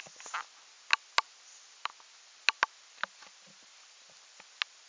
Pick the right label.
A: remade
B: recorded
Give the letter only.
B